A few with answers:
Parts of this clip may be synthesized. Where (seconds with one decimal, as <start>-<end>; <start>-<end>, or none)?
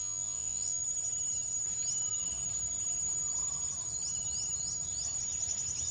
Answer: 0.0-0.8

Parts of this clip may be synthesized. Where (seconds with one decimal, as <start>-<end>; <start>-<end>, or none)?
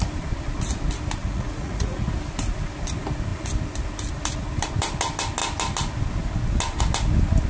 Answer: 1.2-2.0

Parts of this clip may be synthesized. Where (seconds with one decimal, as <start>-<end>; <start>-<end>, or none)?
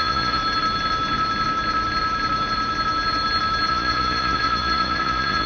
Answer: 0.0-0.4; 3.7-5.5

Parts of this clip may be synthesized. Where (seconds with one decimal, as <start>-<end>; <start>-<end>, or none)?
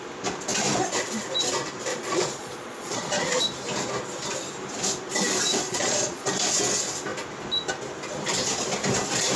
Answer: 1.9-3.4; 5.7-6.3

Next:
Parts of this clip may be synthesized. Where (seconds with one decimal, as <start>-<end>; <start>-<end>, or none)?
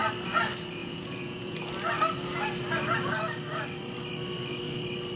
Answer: 0.8-1.6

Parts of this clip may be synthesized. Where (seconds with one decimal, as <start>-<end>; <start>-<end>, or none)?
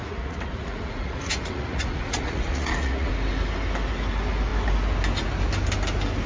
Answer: 0.0-3.1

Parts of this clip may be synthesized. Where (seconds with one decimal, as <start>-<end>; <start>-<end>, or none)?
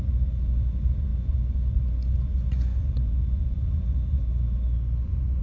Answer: 0.0-4.2; 5.0-5.4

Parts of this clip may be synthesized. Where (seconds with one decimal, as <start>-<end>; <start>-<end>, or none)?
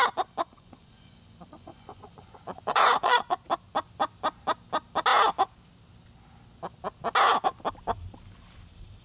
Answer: 0.5-3.4